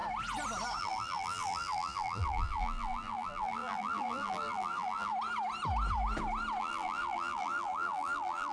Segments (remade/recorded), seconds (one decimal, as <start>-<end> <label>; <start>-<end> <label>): 0.0-0.8 recorded; 0.8-5.1 remade; 5.1-6.6 recorded; 6.6-8.5 remade